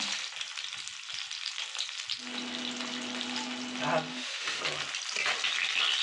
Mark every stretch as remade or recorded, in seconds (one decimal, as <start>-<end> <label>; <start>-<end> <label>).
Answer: 0.0-4.1 recorded; 4.1-4.6 remade; 4.6-6.0 recorded